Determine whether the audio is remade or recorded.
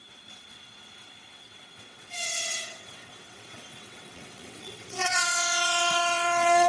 remade